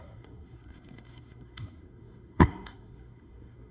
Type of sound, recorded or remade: remade